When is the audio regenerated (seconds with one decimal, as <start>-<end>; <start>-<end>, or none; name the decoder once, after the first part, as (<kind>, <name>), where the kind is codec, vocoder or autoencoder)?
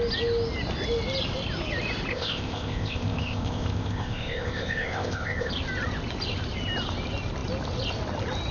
2.1-5.5 (codec, ZipCodec)